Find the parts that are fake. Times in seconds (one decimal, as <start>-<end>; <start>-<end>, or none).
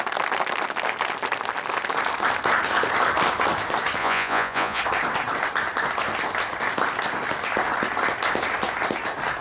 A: 4.0-4.8